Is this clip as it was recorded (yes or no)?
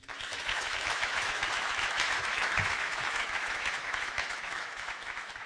no